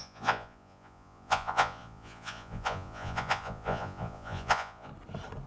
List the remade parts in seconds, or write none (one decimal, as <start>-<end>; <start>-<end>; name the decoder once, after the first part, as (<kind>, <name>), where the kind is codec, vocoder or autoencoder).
0.0-4.9 (vocoder, Vocos)